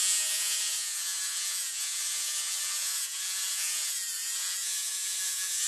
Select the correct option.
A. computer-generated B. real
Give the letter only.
A